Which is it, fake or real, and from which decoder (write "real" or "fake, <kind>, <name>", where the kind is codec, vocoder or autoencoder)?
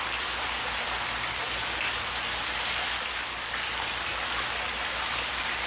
real